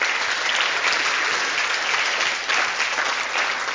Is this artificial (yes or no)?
no